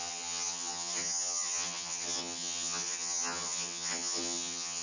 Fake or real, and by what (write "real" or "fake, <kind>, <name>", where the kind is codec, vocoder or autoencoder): fake, vocoder, HiFi-GAN